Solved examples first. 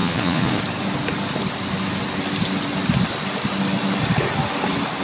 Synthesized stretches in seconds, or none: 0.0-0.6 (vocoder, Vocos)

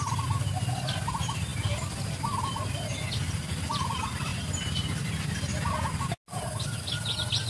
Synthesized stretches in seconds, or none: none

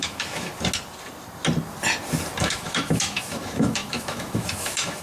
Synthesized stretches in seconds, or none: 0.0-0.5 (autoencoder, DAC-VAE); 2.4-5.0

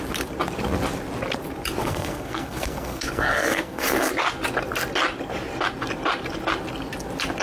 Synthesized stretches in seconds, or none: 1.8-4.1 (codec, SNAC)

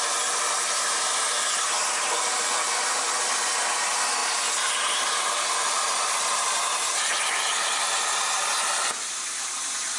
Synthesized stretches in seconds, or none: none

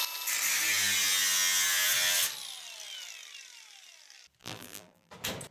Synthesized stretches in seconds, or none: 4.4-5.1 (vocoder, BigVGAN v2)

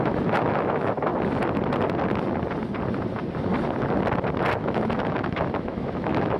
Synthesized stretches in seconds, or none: 0.0-1.1 (autoencoder, DAC-VAE); 4.6-6.4

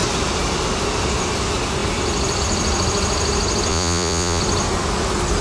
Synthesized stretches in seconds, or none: 3.7-4.4 (vocoder, Vocos)